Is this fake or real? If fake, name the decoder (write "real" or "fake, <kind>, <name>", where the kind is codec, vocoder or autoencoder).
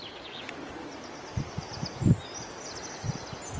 real